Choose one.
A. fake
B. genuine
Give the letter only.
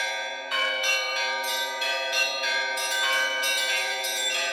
A